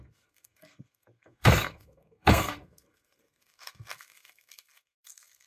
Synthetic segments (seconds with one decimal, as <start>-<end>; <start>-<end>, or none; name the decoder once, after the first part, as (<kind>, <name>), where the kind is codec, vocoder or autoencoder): 0.0-5.5 (codec, SNAC)